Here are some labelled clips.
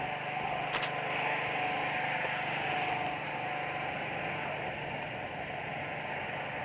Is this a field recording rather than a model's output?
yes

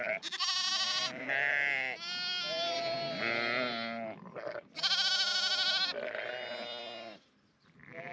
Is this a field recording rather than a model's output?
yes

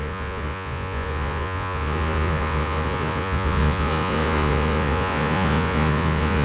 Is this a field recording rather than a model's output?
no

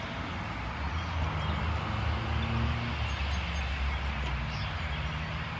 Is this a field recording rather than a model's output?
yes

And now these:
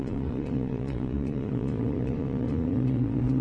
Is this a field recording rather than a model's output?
no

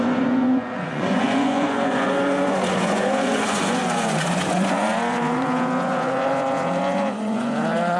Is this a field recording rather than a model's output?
no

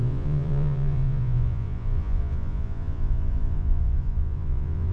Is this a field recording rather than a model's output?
no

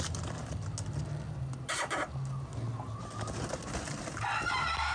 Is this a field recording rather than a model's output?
yes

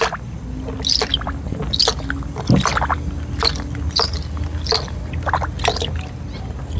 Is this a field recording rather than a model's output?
yes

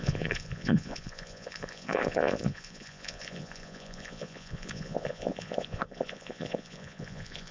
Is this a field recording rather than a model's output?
no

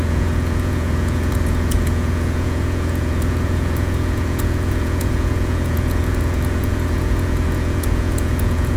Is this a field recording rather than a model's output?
no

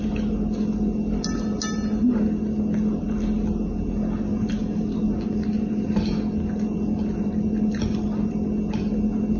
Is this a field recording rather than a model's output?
yes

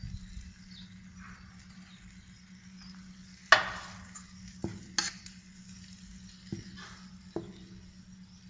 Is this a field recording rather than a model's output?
yes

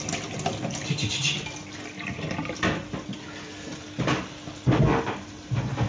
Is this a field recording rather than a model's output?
yes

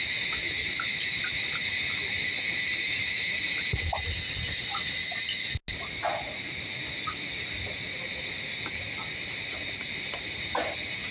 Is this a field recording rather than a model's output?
yes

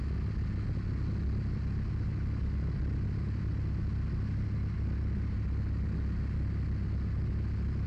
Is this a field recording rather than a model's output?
yes